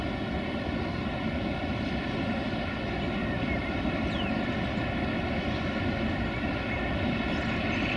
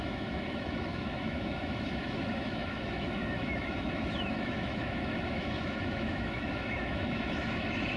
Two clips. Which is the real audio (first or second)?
first